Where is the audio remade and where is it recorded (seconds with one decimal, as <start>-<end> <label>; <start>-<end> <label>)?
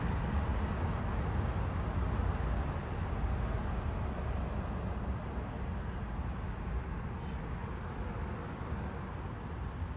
0.0-10.0 recorded